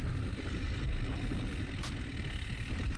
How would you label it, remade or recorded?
recorded